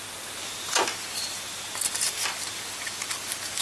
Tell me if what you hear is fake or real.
real